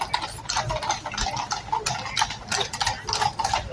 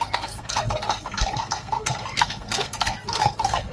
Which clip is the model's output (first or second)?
second